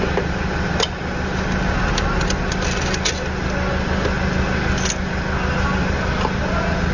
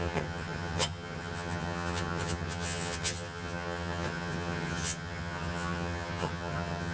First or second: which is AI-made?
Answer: second